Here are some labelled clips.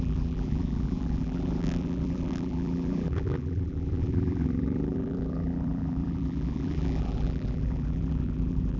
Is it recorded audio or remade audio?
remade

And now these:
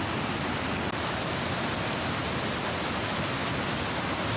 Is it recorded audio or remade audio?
recorded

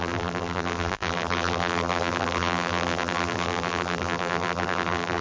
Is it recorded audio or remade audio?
remade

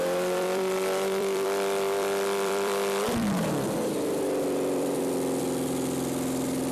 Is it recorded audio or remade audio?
remade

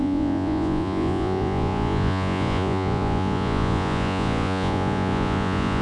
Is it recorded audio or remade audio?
remade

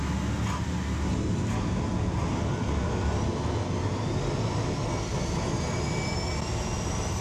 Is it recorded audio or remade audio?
recorded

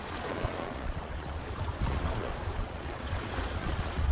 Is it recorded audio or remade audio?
remade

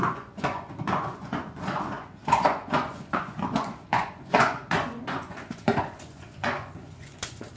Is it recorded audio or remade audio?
remade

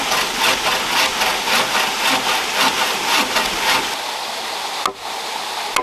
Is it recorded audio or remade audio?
recorded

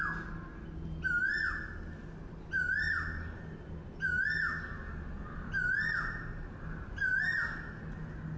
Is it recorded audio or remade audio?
recorded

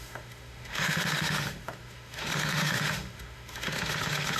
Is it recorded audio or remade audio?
remade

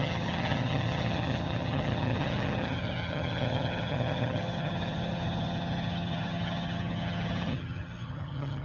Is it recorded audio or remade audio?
remade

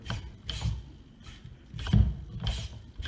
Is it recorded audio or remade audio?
recorded